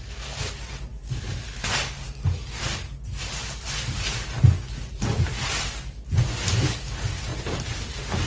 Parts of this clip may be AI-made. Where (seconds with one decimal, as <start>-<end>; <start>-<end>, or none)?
0.9-2.0